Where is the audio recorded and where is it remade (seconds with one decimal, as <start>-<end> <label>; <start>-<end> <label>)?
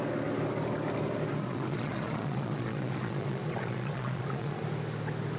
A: 0.0-1.4 recorded; 1.4-4.6 remade; 4.6-5.4 recorded